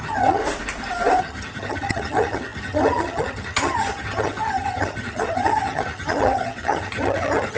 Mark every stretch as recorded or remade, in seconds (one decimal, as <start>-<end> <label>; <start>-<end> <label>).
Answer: 0.0-0.4 remade; 0.4-1.2 recorded; 1.2-7.6 remade